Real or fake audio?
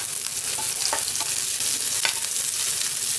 real